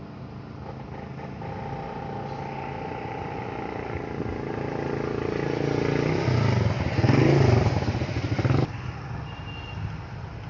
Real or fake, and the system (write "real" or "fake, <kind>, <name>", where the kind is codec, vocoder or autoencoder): real